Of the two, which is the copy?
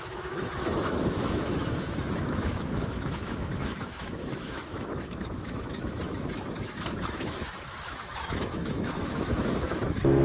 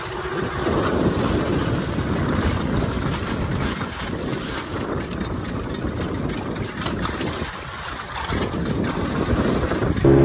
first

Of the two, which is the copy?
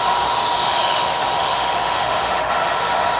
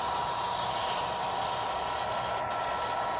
first